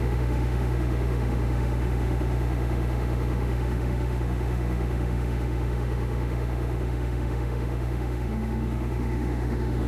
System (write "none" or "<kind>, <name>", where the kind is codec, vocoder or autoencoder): autoencoder, DAC-VAE